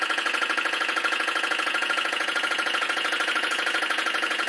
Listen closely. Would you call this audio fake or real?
fake